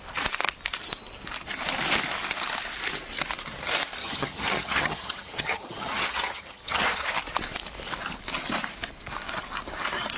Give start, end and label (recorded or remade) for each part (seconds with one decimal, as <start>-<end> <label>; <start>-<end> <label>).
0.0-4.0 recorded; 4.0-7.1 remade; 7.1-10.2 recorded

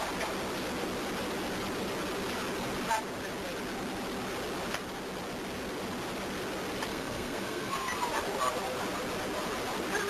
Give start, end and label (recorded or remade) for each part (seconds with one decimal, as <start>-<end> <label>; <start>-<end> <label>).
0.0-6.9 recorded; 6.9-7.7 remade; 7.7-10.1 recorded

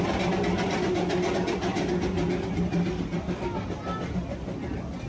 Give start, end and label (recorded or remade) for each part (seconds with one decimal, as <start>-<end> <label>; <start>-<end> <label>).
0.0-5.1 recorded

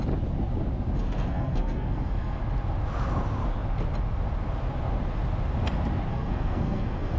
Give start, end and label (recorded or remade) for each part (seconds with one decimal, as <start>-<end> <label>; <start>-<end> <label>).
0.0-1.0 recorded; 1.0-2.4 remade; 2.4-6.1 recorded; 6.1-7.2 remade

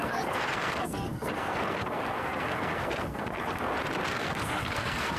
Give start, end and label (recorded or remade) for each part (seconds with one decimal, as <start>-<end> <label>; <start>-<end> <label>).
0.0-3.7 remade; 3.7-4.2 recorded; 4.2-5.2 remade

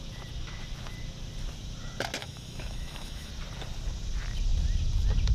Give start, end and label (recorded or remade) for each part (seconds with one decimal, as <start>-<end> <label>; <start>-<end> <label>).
0.0-2.2 recorded; 2.2-3.3 remade; 3.3-5.3 recorded

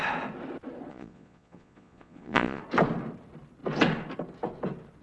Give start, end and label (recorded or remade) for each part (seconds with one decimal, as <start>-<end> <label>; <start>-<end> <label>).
0.0-0.9 recorded; 0.9-2.6 remade; 2.6-5.0 recorded